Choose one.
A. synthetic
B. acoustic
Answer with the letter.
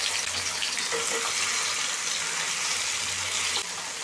B